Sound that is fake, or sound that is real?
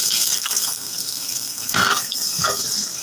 fake